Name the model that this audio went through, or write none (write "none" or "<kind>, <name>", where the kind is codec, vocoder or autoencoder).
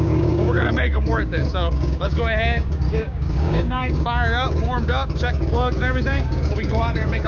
codec, DAC